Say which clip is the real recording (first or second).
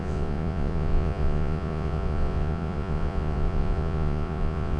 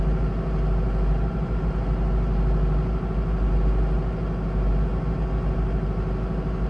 second